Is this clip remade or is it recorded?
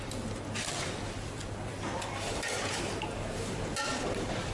remade